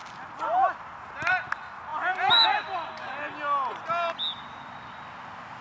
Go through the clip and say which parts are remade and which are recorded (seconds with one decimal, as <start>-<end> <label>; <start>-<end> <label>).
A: 0.0-5.6 recorded